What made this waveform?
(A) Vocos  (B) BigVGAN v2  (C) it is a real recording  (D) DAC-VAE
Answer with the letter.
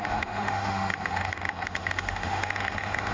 D